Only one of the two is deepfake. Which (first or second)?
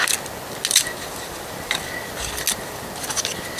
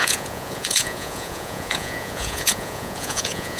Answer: second